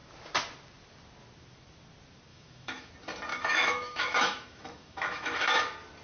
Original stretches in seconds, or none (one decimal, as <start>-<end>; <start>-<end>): 0.0-2.3; 2.9-3.3; 5.6-6.0

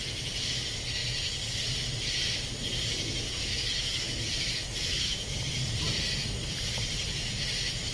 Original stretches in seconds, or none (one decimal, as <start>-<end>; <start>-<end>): 0.0-3.5; 5.4-7.9

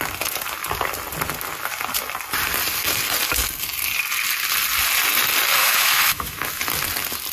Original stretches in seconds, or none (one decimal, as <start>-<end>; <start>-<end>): 0.0-5.6; 6.6-7.3

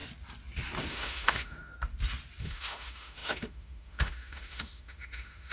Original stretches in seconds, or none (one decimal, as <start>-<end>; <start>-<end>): 0.0-0.9; 1.7-2.4

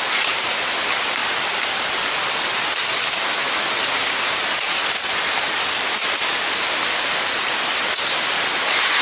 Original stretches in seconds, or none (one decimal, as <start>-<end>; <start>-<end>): 0.0-9.0

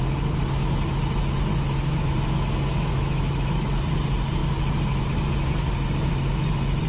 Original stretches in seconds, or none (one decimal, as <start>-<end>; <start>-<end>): 0.0-1.5; 3.8-6.9

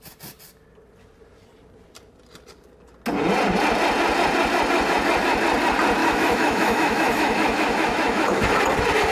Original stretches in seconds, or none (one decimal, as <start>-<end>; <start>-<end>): 0.0-6.0; 8.6-9.1

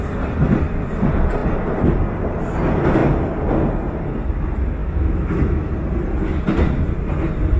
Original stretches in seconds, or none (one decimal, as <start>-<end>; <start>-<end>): 0.0-4.8; 5.7-7.6